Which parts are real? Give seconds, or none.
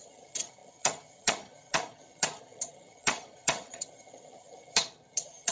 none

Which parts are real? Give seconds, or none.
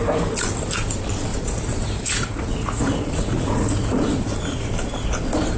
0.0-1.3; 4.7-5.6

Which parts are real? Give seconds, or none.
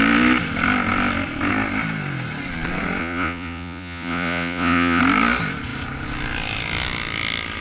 0.0-3.0; 5.0-7.6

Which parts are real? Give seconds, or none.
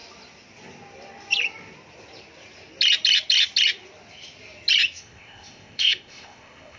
0.0-5.0